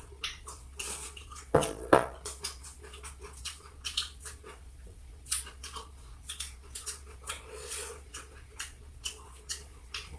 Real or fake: fake